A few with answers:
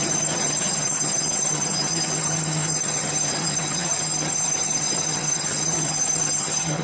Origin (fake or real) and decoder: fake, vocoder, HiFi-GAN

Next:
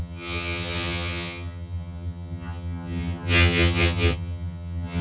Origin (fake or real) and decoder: fake, vocoder, HiFi-GAN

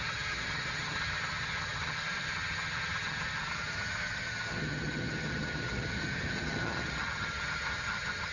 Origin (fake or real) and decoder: fake, vocoder, HiFi-GAN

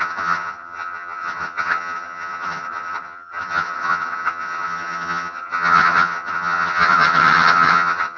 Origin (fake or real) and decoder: fake, vocoder, HiFi-GAN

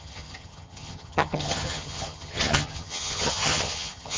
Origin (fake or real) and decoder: fake, vocoder, HiFi-GAN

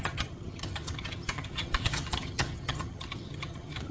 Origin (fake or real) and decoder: fake, vocoder, HiFi-GAN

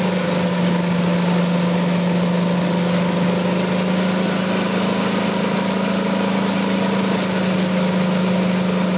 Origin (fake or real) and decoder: real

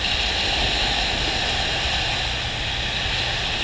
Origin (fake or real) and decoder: real